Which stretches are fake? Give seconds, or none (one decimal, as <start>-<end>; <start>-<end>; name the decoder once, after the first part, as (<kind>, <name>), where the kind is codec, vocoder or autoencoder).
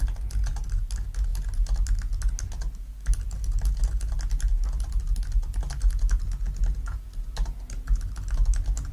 none